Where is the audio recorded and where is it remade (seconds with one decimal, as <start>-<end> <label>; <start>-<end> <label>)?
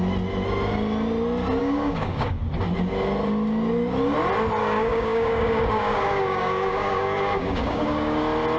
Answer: 0.0-1.6 recorded; 1.6-2.4 remade; 2.4-4.6 recorded; 4.6-8.2 remade; 8.2-8.6 recorded